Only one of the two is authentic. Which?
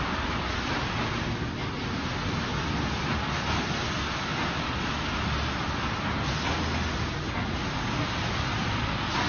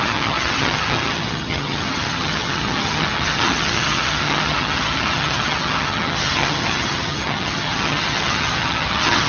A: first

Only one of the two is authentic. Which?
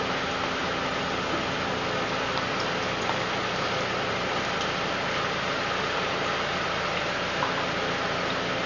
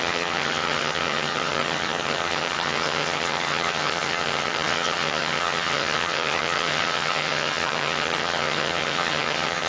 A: first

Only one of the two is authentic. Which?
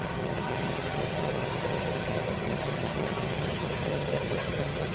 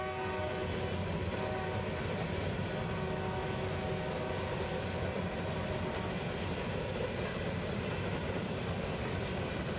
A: second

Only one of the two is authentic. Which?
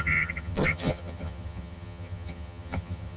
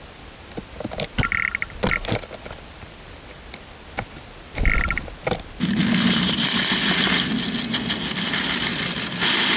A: second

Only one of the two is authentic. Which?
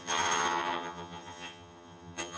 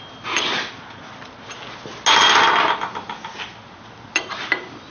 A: second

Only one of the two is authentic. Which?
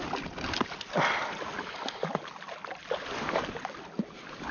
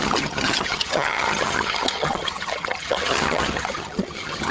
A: first